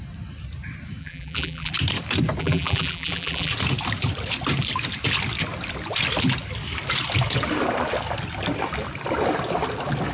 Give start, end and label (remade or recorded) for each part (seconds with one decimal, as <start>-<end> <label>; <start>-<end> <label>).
0.0-1.0 recorded; 1.0-1.7 remade; 1.7-2.4 recorded; 2.4-3.5 remade; 3.5-10.1 recorded